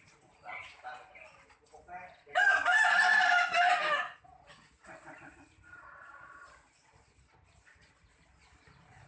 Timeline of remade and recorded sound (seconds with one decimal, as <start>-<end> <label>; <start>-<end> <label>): 0.0-9.1 recorded